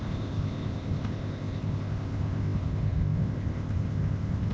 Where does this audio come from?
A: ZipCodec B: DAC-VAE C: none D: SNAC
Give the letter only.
A